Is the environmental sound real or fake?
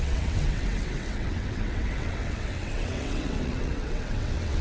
fake